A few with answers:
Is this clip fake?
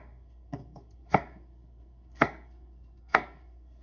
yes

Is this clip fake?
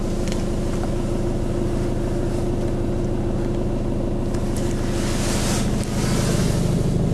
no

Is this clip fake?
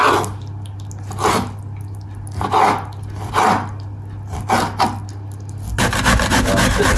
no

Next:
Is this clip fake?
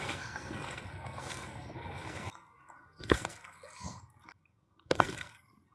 yes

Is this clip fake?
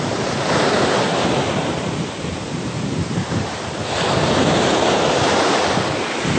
yes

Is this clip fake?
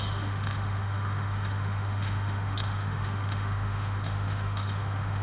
yes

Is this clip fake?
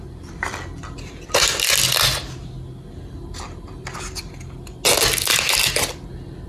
no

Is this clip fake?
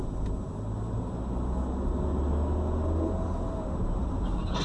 no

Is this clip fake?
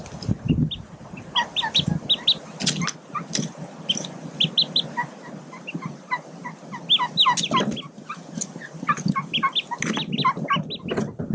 no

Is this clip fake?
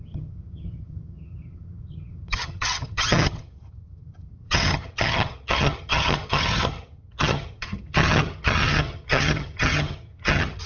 yes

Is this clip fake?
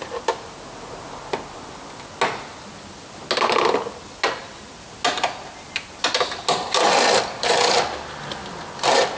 no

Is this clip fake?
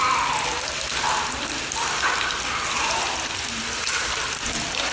no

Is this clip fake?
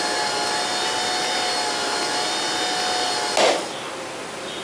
no